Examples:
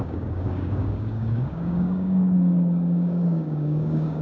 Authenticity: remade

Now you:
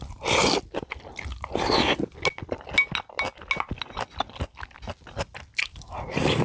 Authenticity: recorded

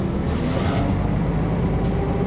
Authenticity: recorded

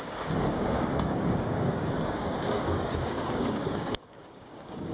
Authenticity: remade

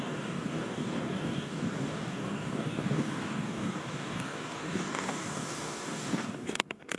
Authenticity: remade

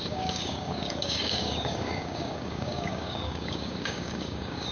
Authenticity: remade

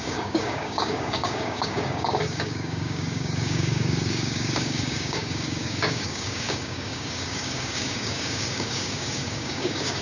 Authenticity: remade